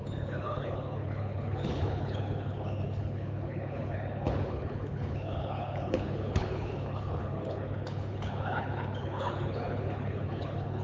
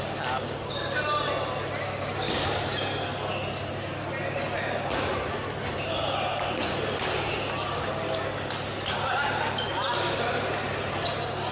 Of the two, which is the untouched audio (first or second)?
second